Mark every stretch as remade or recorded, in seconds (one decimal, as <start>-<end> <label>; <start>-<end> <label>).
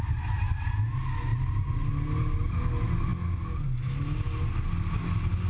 0.0-5.5 recorded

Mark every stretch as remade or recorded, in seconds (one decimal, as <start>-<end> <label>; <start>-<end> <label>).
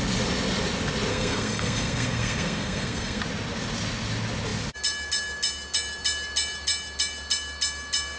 0.0-1.1 recorded; 1.1-3.2 remade; 3.2-8.2 recorded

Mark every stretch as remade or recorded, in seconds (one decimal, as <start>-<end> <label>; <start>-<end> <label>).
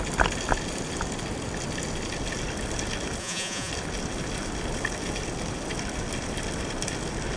0.0-3.2 recorded; 3.2-3.7 remade; 3.7-7.4 recorded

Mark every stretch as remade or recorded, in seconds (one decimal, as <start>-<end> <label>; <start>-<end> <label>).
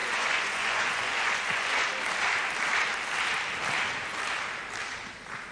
0.0-1.9 remade; 1.9-5.5 recorded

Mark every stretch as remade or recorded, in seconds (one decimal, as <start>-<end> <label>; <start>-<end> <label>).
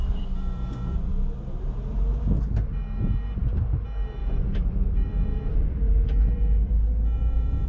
0.0-1.9 remade; 1.9-4.2 recorded; 4.2-6.7 remade; 6.7-7.7 recorded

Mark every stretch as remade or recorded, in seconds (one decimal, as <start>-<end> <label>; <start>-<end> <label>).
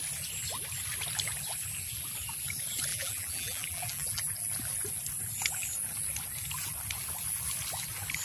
0.0-2.9 recorded; 2.9-4.3 remade; 4.3-8.2 recorded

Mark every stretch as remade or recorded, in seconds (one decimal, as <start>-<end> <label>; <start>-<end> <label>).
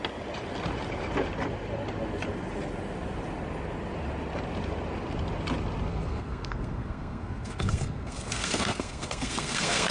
0.0-5.9 recorded; 5.9-9.9 remade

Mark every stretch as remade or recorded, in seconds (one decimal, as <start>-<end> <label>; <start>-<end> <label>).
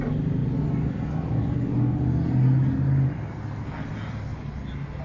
0.0-5.0 recorded